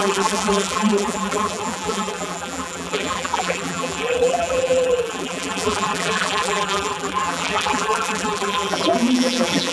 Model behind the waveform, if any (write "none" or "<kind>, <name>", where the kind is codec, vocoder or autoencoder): vocoder, BigVGAN v2